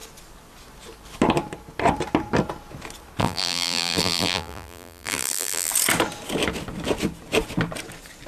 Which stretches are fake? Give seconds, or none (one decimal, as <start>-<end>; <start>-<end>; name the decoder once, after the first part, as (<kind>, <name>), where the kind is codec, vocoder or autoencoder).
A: 3.2-5.7 (vocoder, BigVGAN v2)